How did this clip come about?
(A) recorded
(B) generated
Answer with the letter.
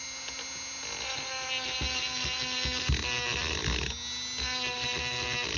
A